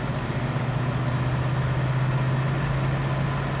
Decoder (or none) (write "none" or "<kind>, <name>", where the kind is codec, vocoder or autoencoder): none